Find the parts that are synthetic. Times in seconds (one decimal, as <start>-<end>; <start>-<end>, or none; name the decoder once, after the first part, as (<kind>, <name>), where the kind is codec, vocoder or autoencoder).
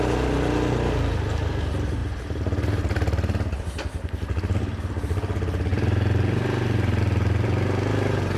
none